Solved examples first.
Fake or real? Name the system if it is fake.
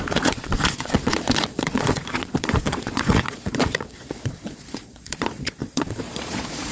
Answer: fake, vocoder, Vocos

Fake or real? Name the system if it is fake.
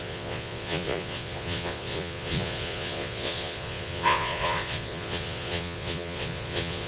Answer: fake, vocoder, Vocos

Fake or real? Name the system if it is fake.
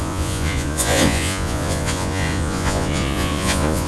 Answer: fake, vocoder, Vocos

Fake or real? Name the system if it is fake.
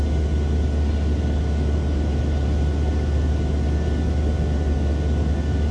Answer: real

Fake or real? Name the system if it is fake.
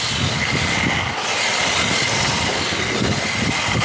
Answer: real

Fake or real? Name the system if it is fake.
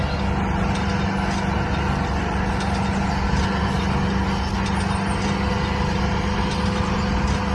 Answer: real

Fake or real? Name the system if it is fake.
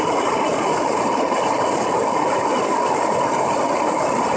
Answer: real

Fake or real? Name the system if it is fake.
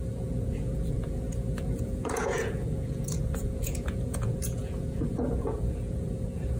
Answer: fake, vocoder, Vocos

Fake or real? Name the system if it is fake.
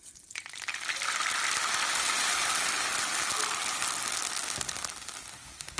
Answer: real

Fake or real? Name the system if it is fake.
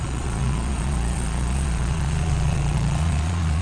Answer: fake, vocoder, Vocos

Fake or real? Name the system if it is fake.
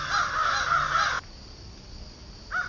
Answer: real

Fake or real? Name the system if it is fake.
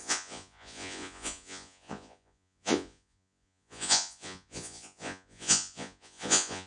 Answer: fake, vocoder, Vocos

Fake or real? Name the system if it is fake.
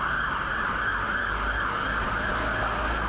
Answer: real